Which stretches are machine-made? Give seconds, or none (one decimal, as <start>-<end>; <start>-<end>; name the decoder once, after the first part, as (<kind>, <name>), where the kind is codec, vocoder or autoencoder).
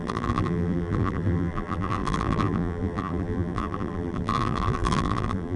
0.0-5.6 (vocoder, BigVGAN v2)